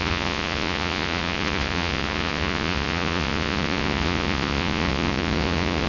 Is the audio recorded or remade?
remade